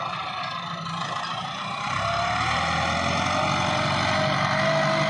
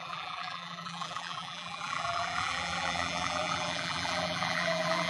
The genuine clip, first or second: first